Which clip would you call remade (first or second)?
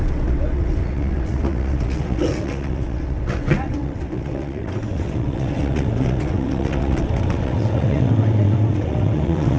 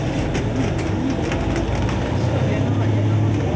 first